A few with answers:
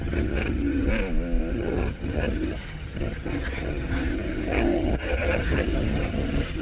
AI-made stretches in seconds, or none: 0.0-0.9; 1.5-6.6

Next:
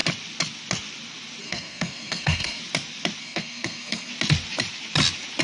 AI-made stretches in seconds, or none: 1.4-2.6; 3.2-4.1

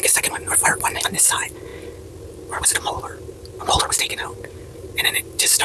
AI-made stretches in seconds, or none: none

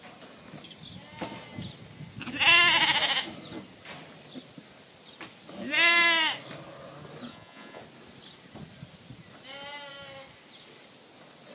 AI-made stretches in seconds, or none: 7.3-7.8

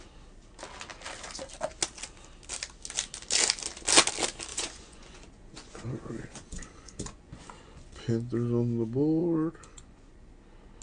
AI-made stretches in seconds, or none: 4.5-8.1; 9.2-10.3